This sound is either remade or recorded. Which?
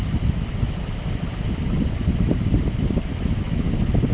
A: recorded